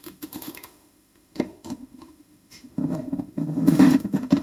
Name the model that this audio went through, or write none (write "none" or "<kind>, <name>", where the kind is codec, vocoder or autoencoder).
autoencoder, DAC-VAE